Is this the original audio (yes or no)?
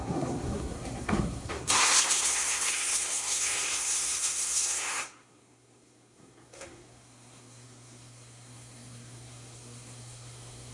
no